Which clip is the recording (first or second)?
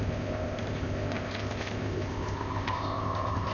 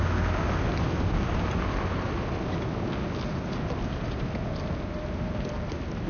second